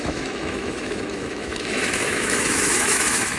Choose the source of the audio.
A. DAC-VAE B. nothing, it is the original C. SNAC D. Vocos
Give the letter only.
A